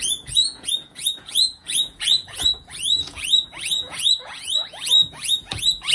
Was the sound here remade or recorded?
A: remade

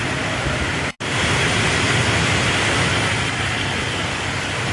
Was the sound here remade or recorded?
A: recorded